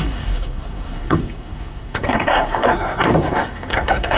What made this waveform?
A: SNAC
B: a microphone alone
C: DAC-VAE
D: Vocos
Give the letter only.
A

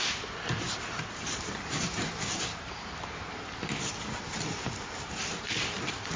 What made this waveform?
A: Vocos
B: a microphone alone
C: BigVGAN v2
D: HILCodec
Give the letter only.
C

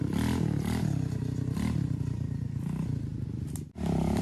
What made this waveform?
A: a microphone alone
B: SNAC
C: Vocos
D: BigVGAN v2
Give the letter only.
A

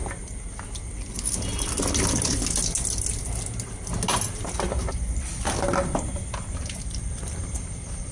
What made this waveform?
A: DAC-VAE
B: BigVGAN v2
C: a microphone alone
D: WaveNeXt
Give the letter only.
C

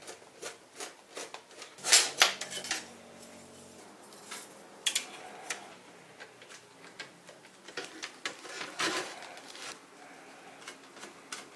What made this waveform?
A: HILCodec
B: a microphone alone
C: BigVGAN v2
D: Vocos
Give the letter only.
B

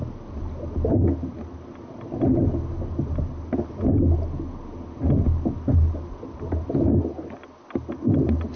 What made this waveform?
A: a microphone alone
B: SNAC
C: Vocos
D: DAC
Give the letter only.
A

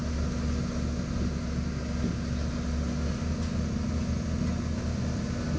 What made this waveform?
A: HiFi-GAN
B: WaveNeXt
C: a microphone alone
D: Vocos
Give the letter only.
C